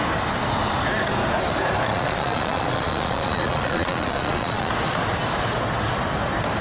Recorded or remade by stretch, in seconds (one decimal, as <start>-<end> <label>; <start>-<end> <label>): 0.0-1.9 recorded; 1.9-4.7 remade; 4.7-6.6 recorded